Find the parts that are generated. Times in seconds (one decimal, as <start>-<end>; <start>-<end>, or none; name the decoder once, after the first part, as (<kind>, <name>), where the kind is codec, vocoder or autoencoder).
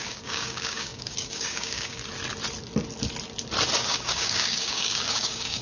0.0-2.0 (codec, DAC); 3.8-5.6